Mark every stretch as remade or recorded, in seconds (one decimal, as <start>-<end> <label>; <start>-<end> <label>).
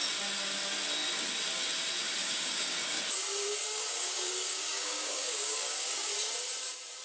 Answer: 0.0-2.2 recorded; 2.2-3.0 remade; 3.0-3.6 recorded; 3.6-6.1 remade; 6.1-7.0 recorded